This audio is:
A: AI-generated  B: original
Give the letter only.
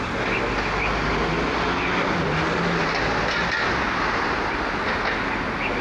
B